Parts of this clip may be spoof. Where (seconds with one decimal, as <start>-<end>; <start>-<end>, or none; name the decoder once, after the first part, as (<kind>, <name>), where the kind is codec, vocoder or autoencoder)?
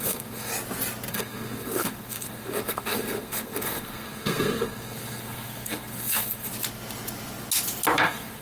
0.0-0.5 (codec, SNAC); 1.1-6.5; 8.0-8.4